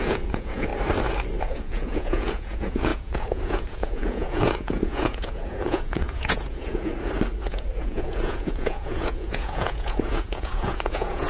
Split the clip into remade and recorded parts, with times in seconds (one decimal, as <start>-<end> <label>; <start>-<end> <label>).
0.0-0.7 remade; 0.7-1.4 recorded; 1.4-6.9 remade; 6.9-7.5 recorded; 7.5-11.3 remade